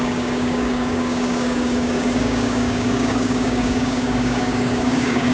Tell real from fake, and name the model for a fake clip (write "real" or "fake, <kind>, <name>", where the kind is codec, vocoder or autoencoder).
fake, codec, DAC